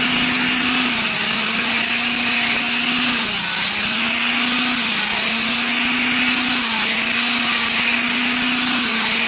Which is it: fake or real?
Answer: real